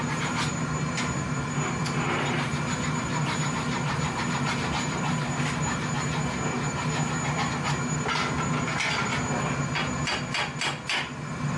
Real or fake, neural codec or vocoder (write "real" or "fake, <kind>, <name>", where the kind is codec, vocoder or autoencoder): real